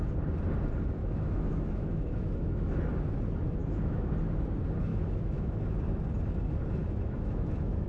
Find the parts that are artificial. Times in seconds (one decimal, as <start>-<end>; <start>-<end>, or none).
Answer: 1.0-2.8; 3.6-4.1; 4.9-5.6; 6.8-7.9